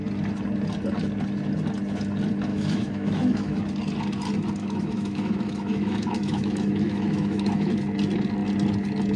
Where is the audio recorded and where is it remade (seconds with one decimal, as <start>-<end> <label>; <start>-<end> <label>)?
0.0-2.5 recorded; 2.5-3.6 remade; 3.6-4.6 recorded; 4.6-7.7 remade; 7.7-9.2 recorded